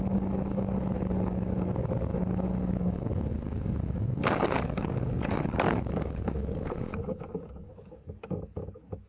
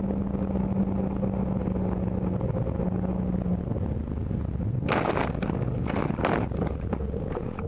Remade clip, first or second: first